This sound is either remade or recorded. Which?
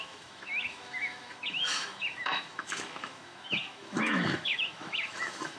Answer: remade